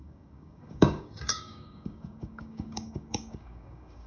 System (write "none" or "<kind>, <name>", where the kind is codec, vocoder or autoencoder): codec, DAC